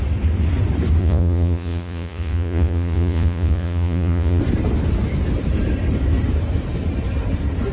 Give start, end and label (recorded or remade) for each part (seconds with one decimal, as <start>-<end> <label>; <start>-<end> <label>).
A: 0.0-1.0 recorded; 1.0-4.4 remade; 4.4-7.7 recorded